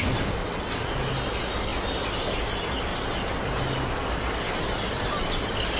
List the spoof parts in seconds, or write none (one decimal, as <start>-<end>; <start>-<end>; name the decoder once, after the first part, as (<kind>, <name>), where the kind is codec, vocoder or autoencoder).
0.4-0.9 (vocoder, WaveNeXt)